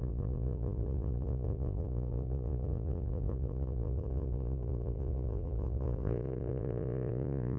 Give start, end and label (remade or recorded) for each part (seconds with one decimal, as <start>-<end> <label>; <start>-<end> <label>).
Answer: 0.0-7.6 remade